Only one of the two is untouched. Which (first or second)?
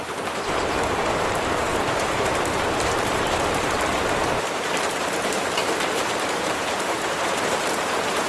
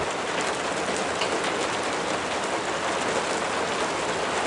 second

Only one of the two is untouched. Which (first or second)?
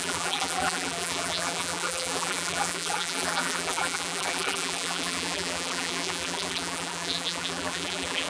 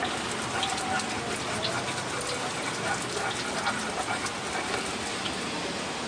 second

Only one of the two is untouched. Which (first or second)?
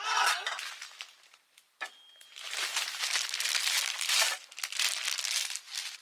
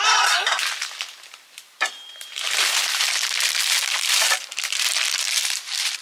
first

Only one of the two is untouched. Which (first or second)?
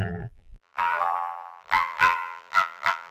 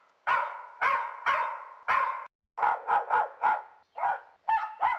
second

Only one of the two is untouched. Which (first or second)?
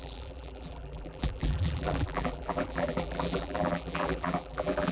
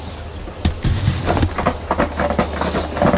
second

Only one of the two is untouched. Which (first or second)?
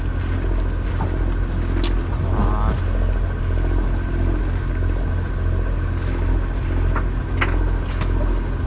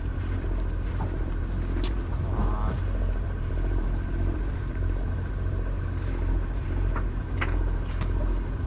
first